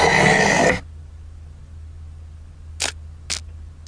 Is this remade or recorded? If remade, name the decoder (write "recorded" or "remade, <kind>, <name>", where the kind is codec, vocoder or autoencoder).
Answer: recorded